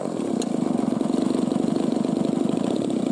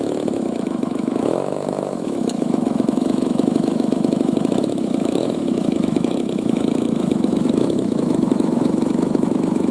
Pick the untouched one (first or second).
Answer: first